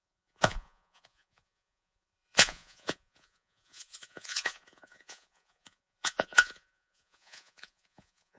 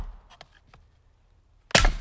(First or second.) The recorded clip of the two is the second